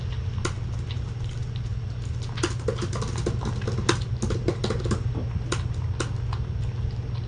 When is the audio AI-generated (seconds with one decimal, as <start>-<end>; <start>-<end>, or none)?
none